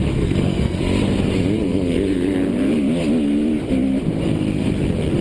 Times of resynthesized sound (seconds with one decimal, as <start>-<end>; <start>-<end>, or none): 0.0-0.8